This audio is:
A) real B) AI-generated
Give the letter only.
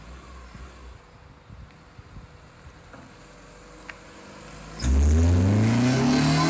A